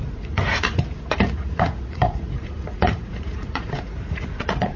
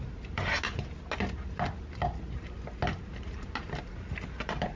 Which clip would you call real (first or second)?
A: second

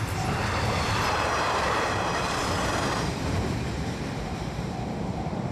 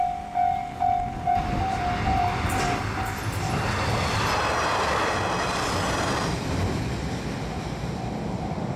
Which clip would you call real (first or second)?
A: second